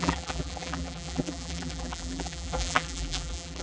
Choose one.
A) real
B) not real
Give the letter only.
B